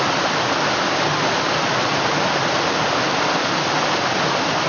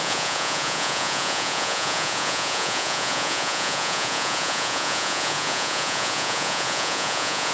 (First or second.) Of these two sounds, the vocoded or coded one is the second